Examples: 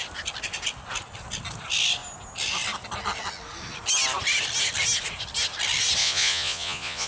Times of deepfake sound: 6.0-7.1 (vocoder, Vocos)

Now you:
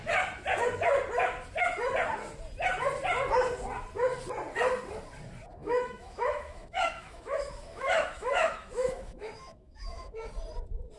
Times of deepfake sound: 5.6-10.3 (autoencoder, DAC-VAE)

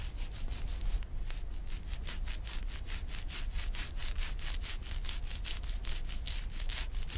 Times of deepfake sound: none

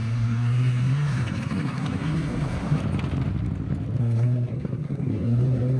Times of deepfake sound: 0.0-2.8 (codec, SNAC); 4.0-5.8